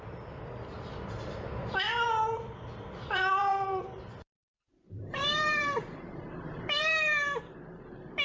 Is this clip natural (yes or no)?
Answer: no